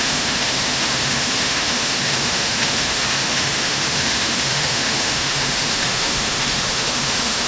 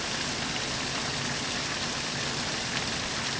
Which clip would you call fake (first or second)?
first